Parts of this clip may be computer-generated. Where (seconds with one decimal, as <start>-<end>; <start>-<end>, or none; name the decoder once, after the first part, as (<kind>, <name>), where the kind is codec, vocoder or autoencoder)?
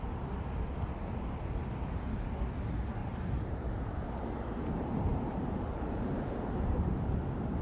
3.0-7.1 (vocoder, BigVGAN v2)